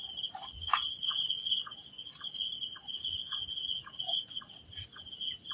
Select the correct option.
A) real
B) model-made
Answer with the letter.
A